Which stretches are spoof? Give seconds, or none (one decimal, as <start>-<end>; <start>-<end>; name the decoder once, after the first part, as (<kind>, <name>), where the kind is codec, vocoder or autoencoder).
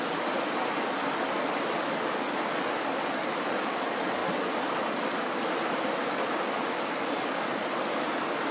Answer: none